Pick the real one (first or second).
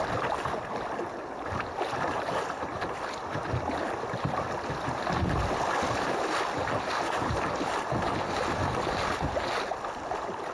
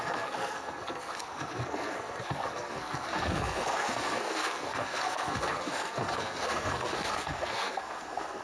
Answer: first